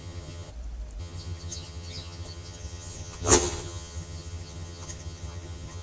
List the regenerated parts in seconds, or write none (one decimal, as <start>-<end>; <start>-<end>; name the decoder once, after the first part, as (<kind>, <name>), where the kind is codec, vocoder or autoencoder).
0.0-0.5 (vocoder, HiFi-GAN); 1.0-5.8